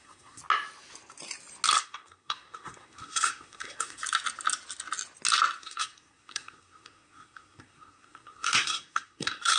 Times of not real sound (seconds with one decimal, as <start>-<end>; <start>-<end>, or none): 0.0-0.4; 1.8-4.0; 5.6-9.6